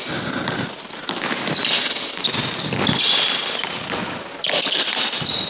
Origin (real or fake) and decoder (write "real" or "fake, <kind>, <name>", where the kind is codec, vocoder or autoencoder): real